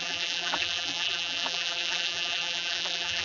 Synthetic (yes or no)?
yes